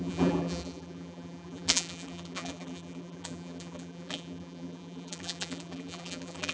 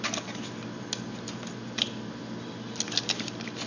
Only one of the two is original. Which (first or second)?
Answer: second